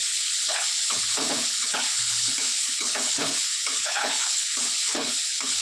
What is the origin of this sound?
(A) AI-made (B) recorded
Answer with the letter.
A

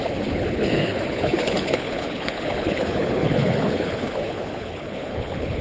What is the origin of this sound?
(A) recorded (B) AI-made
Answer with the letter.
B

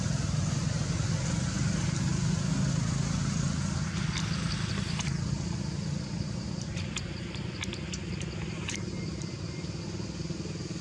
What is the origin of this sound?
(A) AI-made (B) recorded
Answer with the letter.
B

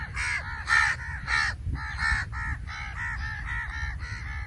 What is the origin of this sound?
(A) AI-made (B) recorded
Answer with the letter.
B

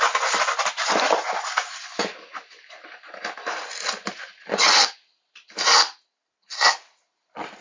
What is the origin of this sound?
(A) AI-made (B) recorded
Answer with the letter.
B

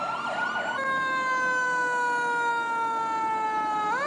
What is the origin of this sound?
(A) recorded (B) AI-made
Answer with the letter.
A